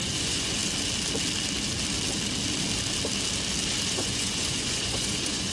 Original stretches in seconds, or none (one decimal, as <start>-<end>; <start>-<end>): 0.6-3.9